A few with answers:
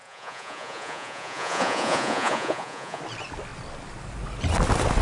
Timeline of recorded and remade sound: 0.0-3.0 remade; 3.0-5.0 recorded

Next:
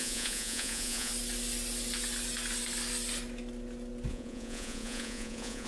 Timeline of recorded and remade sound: 0.0-1.1 remade; 1.1-4.1 recorded; 4.1-5.7 remade

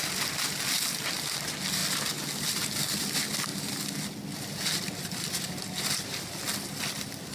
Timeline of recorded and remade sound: 0.0-7.3 recorded

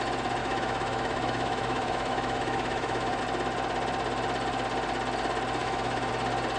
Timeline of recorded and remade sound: 0.0-0.4 recorded; 0.4-3.2 remade; 3.2-5.6 recorded; 5.6-6.1 remade; 6.1-6.6 recorded